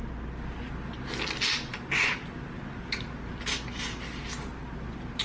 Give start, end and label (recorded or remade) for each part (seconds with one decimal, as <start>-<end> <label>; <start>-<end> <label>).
0.0-5.2 recorded